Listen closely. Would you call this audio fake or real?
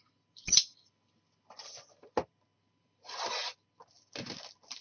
real